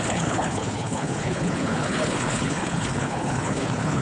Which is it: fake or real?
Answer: fake